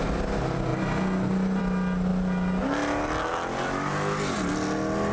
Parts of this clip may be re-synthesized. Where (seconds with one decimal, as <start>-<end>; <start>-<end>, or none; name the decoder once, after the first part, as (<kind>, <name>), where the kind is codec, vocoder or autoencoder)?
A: none